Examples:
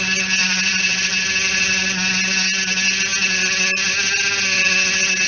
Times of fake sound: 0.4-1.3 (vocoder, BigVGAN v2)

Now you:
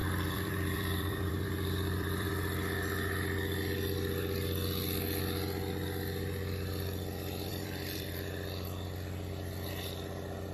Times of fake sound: 0.0-2.3 (vocoder, BigVGAN v2); 7.5-8.1

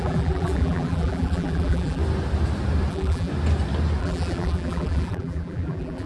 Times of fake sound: 0.0-2.0 (vocoder, BigVGAN v2); 2.9-3.3; 4.0-6.1

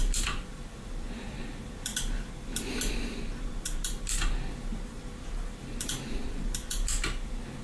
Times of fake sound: 0.0-7.6 (vocoder, BigVGAN v2)

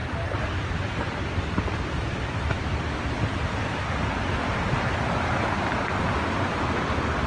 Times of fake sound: 0.0-3.0 (vocoder, BigVGAN v2)

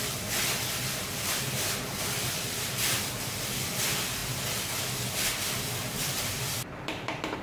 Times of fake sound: 0.0-4.2 (vocoder, BigVGAN v2); 5.1-7.4

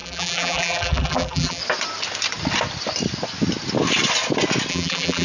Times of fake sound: 0.0-1.6 (vocoder, BigVGAN v2); 4.7-5.2

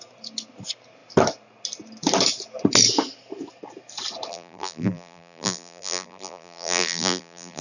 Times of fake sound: 4.3-7.6 (vocoder, BigVGAN v2)